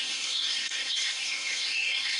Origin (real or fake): fake